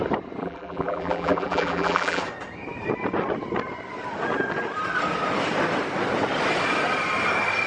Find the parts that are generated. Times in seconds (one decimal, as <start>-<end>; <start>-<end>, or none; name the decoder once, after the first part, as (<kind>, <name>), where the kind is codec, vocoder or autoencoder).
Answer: 0.4-2.2 (vocoder, BigVGAN v2)

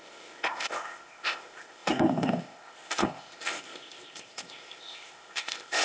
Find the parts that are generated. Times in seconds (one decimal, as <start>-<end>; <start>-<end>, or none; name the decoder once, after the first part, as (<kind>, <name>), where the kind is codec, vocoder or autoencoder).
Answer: 0.0-5.8 (codec, ZipCodec)